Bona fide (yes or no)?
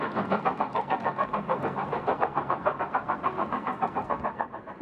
no